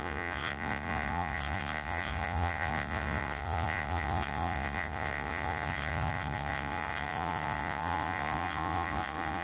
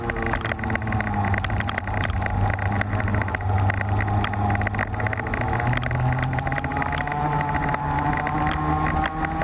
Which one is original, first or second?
second